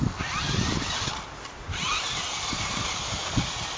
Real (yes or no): yes